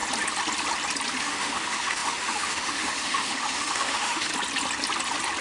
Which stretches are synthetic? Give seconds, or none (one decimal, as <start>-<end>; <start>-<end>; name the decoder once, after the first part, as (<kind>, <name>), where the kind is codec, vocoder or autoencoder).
1.2-4.3 (autoencoder, DAC-VAE)